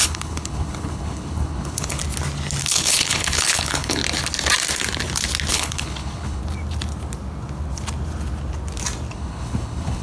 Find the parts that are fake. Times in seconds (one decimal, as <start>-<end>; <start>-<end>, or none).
0.0-2.0; 2.6-4.0; 5.5-6.4; 9.1-10.0

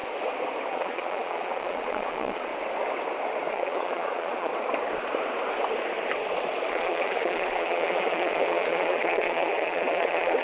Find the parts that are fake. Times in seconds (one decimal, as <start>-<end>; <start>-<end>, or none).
0.7-2.5; 3.5-4.5; 6.7-10.4

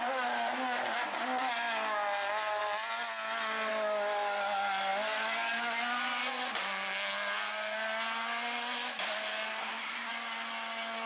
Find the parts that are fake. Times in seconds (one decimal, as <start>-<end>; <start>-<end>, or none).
9.6-10.1

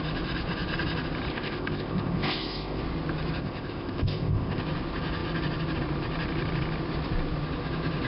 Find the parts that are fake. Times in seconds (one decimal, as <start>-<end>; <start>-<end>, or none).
1.3-2.8; 3.4-4.6

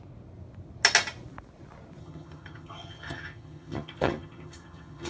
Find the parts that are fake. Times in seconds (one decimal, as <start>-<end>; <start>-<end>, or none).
2.0-5.1